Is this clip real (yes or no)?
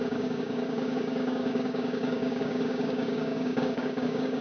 no